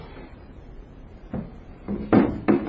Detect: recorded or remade remade